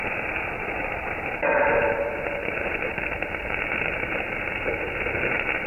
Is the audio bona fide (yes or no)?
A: no